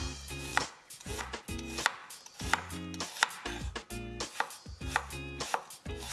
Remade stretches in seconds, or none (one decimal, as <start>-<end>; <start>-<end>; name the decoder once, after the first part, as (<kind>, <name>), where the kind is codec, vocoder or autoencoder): 0.5-1.2 (vocoder, Vocos)